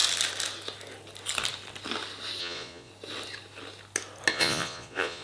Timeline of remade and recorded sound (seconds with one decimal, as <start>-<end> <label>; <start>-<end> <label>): 0.0-2.4 recorded; 2.4-2.9 remade; 2.9-4.3 recorded; 4.3-5.2 remade